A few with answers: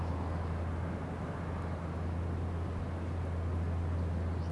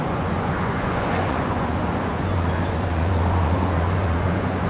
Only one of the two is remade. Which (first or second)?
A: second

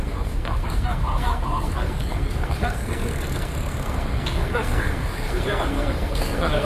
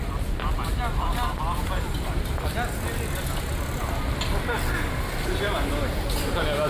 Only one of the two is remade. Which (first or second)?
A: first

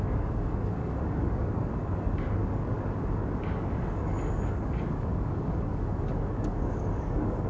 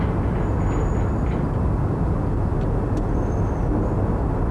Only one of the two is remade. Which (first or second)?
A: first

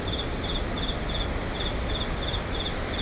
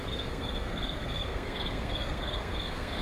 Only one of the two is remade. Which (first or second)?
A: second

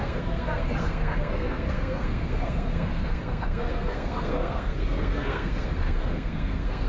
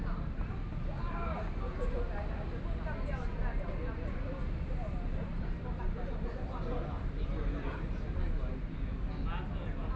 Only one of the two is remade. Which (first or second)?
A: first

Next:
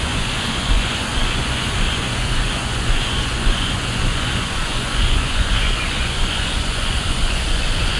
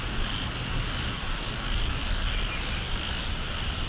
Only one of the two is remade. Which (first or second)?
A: first